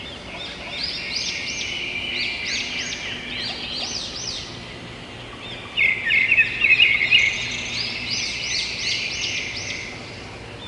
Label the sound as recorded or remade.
recorded